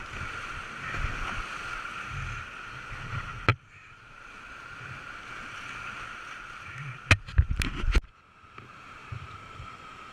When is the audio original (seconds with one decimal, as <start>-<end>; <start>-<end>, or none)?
0.0-9.0

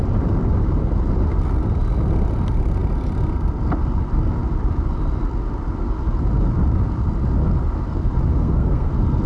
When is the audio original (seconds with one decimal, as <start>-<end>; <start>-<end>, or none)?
0.0-8.3; 8.9-9.3

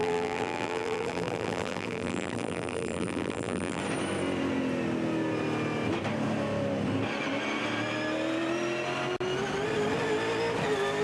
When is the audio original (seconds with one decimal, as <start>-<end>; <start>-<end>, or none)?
3.8-11.0

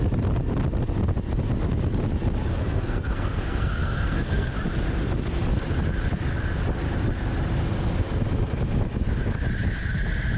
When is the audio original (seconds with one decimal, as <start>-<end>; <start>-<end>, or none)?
0.0-2.5; 4.5-10.4